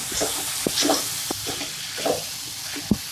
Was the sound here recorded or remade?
recorded